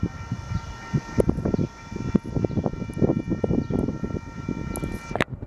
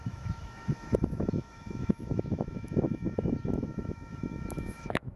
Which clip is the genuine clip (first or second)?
first